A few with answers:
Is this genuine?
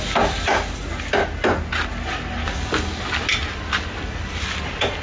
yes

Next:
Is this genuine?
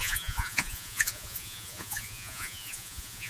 no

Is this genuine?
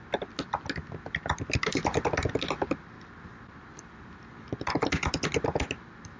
yes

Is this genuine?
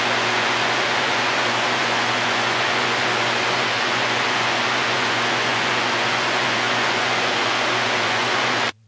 no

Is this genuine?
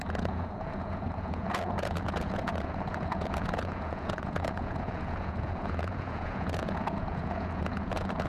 no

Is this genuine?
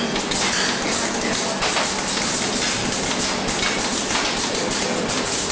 yes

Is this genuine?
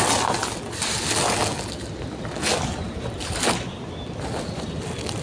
yes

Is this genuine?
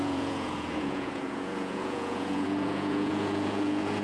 no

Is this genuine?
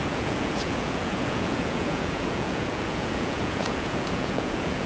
no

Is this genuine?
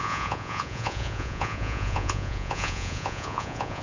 no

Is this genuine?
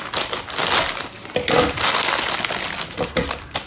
yes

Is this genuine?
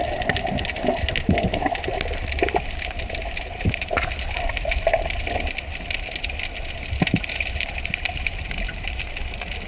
yes